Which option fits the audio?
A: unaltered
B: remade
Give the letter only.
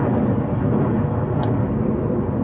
A